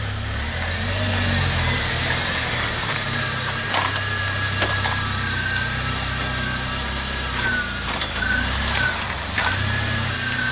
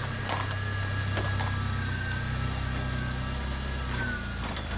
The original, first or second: second